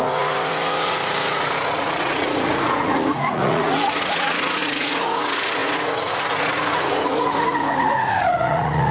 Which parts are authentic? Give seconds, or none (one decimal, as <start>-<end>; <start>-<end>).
none